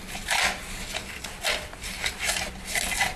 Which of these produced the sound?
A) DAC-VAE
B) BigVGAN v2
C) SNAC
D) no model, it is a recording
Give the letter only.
D